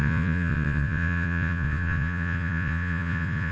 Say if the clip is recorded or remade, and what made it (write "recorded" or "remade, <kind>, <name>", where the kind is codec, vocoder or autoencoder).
remade, vocoder, Vocos